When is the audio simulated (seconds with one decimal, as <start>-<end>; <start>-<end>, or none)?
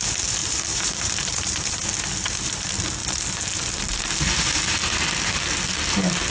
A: 0.4-1.9